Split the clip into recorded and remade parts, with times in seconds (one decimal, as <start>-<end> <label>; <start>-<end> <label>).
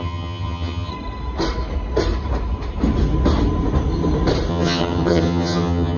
0.0-0.9 remade; 0.9-4.5 recorded; 4.5-6.0 remade